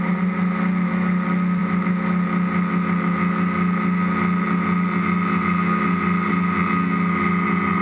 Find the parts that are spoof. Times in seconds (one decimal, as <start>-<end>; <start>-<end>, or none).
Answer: none